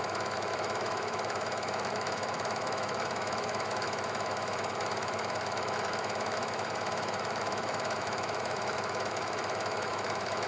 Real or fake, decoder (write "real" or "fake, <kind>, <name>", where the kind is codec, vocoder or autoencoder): fake, autoencoder, DAC-VAE